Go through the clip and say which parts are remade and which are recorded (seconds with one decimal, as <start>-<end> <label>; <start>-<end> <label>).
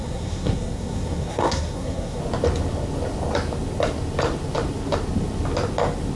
0.0-2.2 remade; 2.2-6.2 recorded